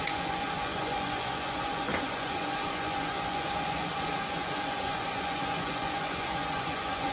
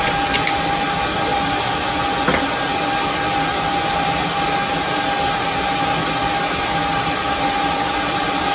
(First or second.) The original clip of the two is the second